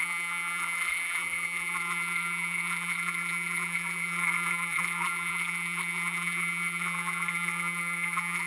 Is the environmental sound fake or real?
fake